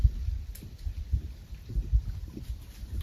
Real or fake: real